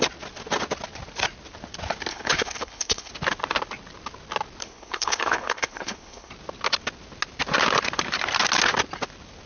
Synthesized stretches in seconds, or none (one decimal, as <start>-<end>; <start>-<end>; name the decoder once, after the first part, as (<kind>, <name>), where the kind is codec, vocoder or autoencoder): 2.1-3.1 (codec, HILCodec); 4.6-6.3